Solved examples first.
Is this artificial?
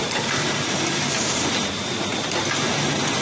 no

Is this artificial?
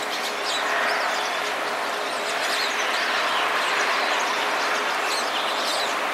yes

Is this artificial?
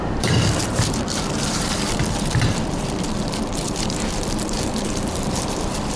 yes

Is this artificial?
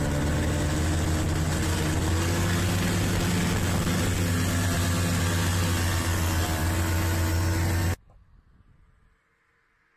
no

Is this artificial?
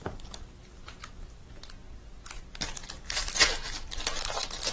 yes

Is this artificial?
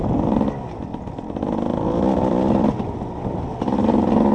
no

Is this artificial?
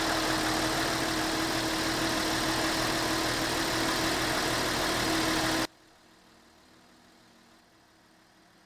no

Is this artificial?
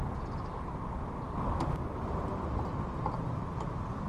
yes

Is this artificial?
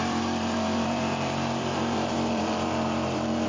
yes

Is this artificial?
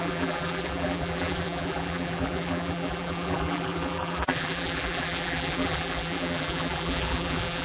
yes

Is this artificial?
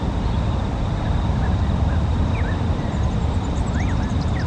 no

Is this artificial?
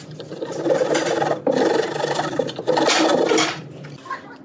yes